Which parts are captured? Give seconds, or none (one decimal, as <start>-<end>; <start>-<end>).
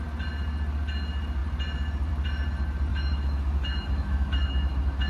0.0-2.9